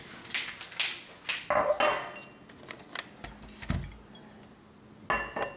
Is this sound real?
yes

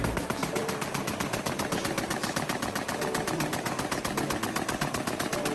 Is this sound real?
no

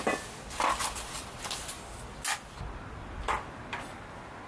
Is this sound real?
yes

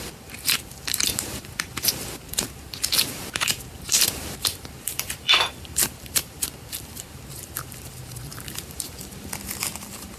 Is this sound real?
no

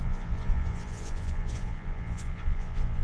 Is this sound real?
no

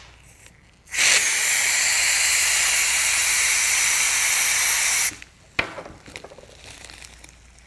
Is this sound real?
yes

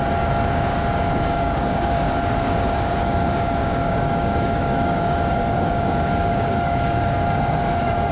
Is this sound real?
no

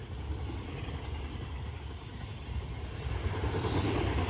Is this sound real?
yes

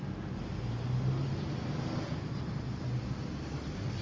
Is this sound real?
yes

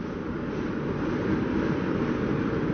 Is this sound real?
no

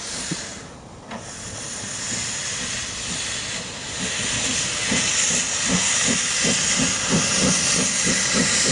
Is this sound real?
yes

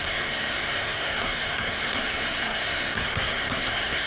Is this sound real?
no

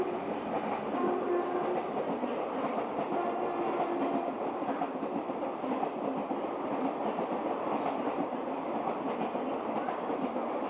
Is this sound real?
yes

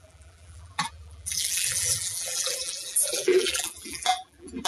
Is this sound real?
no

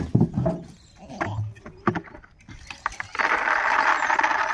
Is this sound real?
yes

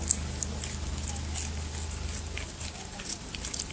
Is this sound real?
yes